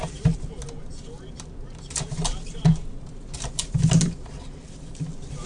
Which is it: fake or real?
real